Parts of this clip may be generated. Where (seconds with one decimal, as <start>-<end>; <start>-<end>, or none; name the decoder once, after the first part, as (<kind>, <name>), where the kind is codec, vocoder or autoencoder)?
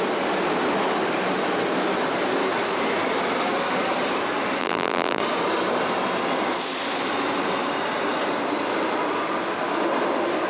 4.6-5.2 (vocoder, BigVGAN v2)